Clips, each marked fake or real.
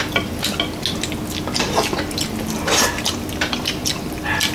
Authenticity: real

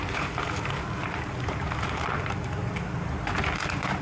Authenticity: fake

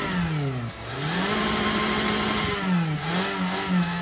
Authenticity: real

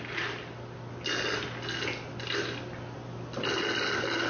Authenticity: real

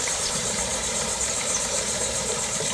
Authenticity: fake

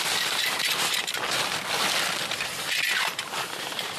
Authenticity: real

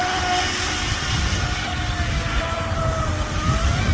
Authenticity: real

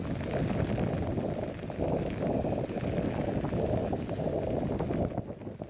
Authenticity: real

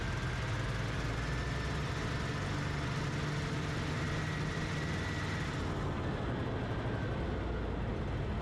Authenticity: real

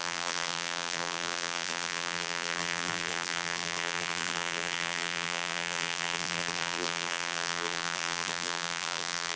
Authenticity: fake